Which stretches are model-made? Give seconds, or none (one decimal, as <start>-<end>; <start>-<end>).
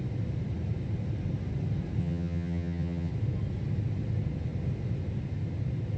2.0-3.1